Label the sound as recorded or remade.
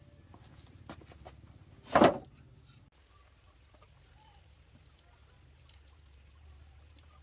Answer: recorded